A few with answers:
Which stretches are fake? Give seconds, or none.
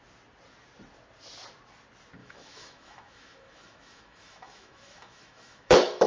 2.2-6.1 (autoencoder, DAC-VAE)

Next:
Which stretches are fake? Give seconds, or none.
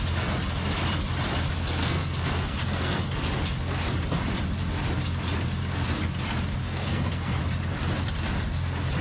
1.8-3.0 (codec, SNAC); 6.6-7.4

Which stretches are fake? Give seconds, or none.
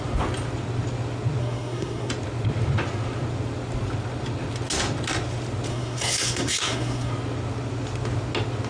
1.4-2.1 (codec, SNAC); 5.7-7.1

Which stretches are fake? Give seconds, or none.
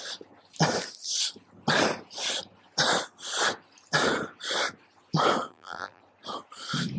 5.5-6.0 (vocoder, BigVGAN v2)